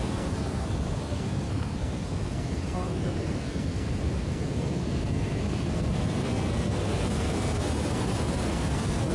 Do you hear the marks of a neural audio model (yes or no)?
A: yes